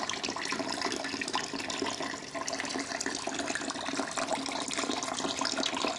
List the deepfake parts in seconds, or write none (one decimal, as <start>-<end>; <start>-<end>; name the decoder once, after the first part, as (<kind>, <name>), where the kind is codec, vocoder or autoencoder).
none